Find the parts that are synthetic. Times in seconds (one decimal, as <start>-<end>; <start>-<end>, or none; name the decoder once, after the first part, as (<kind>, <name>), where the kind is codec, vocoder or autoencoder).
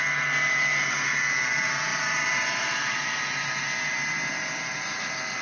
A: 1.9-3.6 (vocoder, BigVGAN v2)